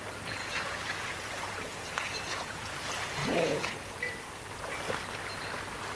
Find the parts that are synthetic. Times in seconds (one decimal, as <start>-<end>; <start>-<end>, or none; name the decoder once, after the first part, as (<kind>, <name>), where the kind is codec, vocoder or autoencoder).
0.4-2.7 (vocoder, Vocos); 3.2-4.1